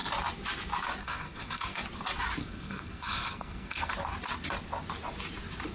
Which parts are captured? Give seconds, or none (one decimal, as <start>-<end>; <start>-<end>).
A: 0.0-1.0; 1.8-2.4; 3.9-5.7